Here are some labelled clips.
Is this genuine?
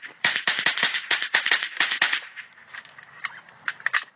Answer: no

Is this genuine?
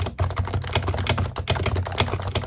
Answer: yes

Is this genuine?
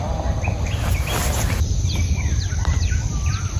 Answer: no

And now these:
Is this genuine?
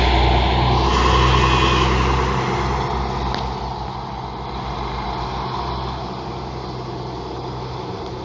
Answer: yes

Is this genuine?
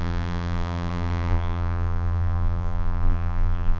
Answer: no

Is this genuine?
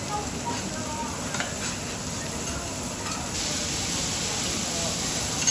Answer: yes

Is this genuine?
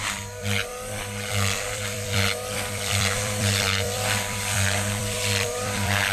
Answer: no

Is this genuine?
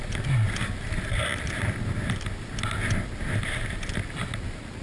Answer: no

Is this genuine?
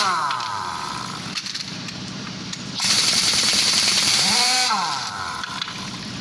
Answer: no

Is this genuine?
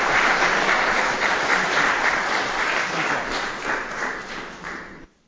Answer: no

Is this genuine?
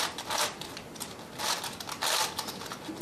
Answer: yes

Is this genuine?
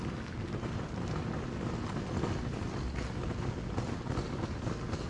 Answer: yes